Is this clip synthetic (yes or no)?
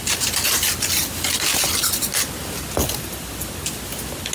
no